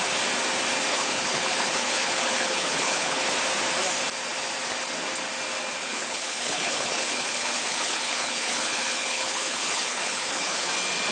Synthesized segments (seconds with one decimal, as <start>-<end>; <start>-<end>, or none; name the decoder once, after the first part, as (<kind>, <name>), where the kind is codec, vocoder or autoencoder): 0.9-3.2 (codec, HILCodec); 5.8-10.7